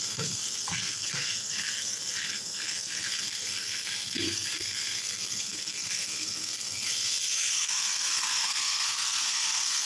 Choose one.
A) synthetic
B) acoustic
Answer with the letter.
A